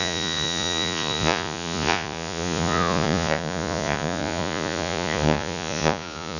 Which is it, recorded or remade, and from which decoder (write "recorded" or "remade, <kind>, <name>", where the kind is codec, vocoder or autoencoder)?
remade, vocoder, Vocos